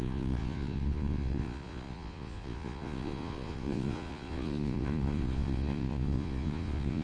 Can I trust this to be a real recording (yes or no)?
no